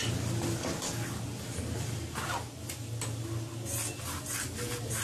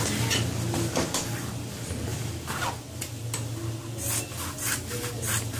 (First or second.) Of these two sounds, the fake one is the second